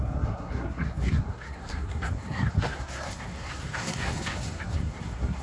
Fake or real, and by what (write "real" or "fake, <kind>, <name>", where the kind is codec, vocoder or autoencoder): fake, codec, SNAC